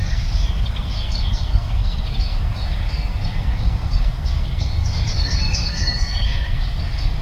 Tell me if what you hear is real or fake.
fake